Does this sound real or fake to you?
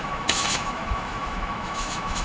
fake